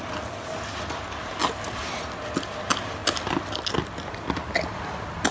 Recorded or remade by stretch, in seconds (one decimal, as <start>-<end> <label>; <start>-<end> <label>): 0.0-5.3 recorded